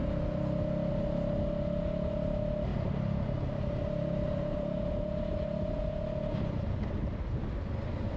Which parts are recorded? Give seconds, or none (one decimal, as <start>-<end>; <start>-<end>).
0.0-2.7; 7.6-8.2